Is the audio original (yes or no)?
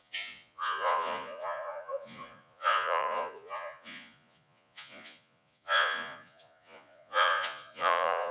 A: no